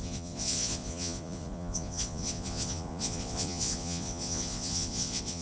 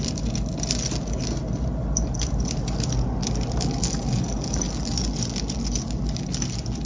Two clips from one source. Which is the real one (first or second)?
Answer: second